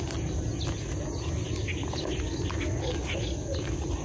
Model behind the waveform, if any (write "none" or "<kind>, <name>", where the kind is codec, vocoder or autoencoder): none